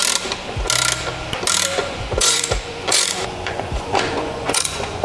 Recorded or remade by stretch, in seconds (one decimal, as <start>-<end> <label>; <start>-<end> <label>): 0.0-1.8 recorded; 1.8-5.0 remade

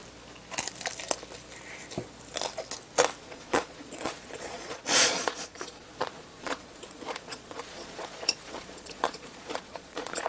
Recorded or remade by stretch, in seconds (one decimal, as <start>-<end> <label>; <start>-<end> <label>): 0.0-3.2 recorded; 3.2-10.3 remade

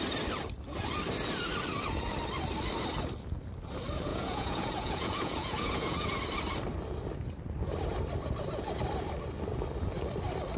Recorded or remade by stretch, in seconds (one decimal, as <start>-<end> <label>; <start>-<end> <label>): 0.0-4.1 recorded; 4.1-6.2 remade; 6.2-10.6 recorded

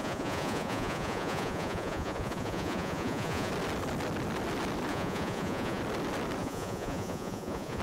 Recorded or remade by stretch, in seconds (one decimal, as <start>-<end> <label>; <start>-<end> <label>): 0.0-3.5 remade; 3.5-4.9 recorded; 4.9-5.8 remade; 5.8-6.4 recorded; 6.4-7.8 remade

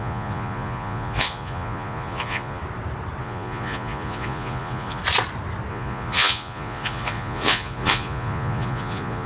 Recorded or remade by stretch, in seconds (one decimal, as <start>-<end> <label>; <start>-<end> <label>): 0.0-2.6 remade; 2.6-3.2 recorded; 3.2-5.0 remade; 5.0-5.7 recorded; 5.7-9.3 remade